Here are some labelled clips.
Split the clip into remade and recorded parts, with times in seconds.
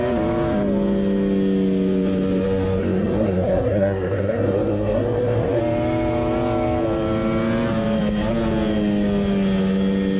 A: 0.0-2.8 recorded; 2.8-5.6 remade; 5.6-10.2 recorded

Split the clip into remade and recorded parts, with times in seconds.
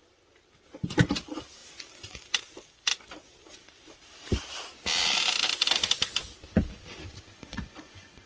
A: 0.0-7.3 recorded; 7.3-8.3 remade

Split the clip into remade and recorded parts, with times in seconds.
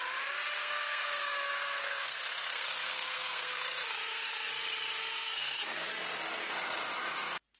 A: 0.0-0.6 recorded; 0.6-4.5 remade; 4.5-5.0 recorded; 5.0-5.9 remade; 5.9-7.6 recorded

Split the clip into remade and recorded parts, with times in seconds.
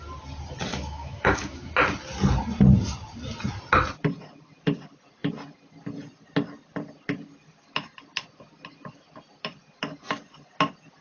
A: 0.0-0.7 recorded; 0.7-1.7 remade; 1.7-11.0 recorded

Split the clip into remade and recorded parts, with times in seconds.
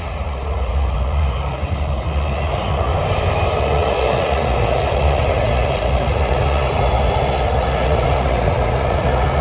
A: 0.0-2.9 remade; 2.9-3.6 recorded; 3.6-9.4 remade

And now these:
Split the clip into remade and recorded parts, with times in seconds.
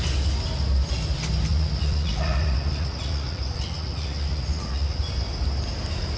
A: 0.0-1.5 recorded; 1.5-5.0 remade; 5.0-6.2 recorded